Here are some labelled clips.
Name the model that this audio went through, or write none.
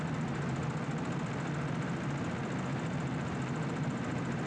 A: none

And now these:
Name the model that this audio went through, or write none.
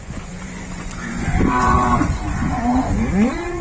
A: vocoder, Vocos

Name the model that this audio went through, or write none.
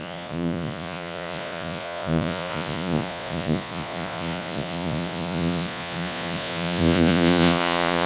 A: vocoder, Vocos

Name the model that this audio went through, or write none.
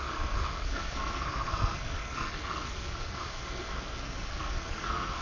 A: codec, SNAC